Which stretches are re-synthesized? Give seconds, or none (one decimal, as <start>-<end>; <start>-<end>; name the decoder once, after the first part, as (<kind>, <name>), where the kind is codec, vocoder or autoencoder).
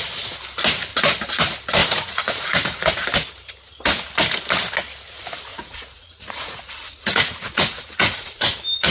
1.8-2.9 (vocoder, Vocos); 5.5-8.4